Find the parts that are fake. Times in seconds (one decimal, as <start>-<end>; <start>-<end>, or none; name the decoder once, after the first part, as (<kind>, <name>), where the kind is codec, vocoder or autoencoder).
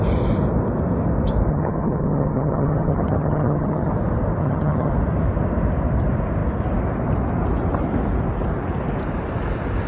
1.5-3.9 (vocoder, HiFi-GAN); 4.4-4.9